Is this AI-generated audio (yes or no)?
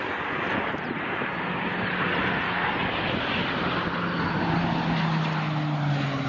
no